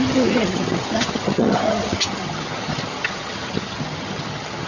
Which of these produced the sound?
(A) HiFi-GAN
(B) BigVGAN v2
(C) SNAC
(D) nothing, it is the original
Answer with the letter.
A